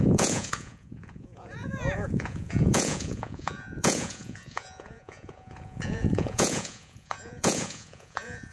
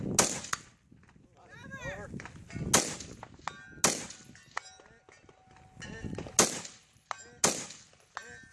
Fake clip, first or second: first